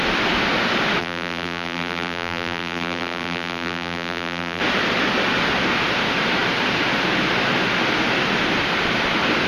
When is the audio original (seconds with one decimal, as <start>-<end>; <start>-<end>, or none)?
0.0-1.0; 4.6-9.5